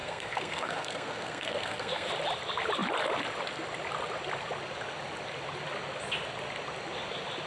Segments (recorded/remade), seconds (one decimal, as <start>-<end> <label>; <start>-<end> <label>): 0.0-2.1 remade; 2.1-7.5 recorded